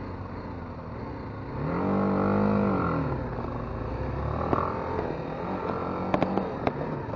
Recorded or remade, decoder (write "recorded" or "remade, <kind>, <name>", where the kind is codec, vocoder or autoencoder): recorded